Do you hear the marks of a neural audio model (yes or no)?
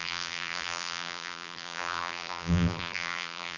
yes